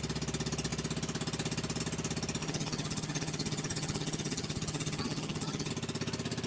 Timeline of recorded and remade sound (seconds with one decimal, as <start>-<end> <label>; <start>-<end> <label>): 0.0-2.4 recorded; 2.4-5.7 remade; 5.7-6.5 recorded